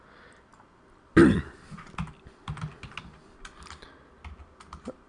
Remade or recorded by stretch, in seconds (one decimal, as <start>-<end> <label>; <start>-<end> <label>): 0.0-5.1 recorded